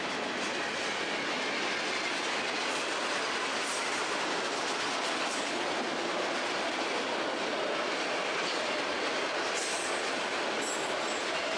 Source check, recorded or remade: recorded